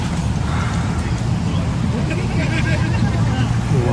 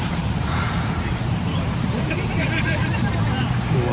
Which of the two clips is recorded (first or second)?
first